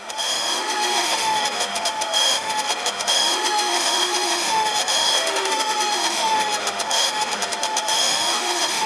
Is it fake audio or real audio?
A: fake